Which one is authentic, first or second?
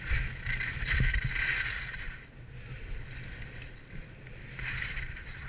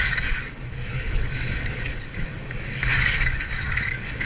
first